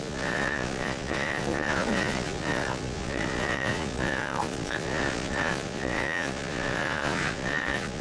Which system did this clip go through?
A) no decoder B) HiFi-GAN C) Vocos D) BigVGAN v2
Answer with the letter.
C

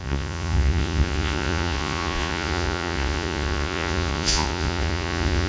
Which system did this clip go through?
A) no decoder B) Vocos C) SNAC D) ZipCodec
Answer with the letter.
B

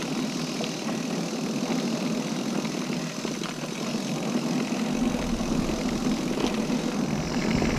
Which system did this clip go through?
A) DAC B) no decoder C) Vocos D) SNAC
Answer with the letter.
B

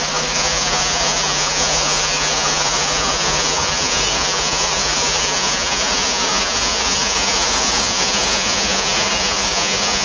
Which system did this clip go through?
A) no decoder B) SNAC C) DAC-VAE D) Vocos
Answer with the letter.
D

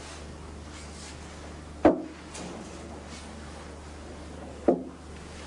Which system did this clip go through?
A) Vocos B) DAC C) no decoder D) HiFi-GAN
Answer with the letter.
C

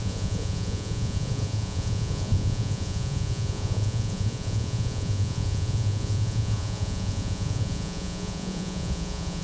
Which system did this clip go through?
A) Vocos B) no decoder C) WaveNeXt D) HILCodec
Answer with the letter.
A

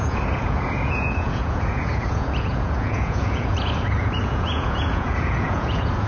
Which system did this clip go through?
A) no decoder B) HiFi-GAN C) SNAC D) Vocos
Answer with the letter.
D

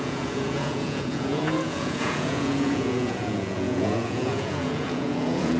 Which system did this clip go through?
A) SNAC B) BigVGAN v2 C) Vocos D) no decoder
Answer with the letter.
C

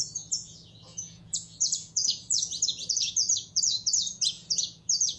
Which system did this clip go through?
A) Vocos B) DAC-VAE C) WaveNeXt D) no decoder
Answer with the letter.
A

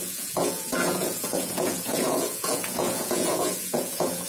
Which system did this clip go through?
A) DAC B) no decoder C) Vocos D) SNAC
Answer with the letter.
C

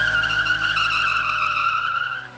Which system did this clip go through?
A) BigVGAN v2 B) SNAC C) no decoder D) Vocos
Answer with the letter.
C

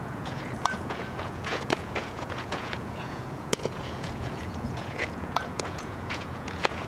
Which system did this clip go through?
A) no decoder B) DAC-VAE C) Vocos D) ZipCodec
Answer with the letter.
C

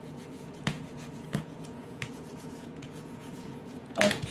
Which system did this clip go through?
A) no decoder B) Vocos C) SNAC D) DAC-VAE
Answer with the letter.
B